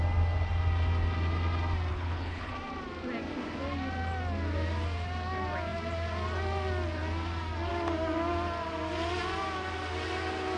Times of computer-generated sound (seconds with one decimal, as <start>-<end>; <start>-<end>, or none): 1.9-2.5